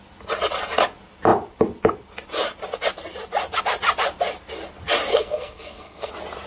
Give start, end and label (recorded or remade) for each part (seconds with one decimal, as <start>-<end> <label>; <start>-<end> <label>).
0.0-5.1 recorded; 5.1-6.1 remade; 6.1-6.5 recorded